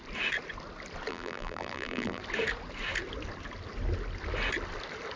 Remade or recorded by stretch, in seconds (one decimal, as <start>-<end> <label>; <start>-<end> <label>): 0.0-1.1 recorded; 1.1-2.2 remade; 2.2-5.2 recorded